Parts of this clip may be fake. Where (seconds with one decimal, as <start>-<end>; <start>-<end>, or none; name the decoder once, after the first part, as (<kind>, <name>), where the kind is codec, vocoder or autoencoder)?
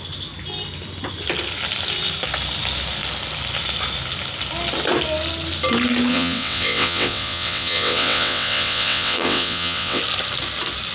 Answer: 6.1-10.0 (vocoder, WaveNeXt)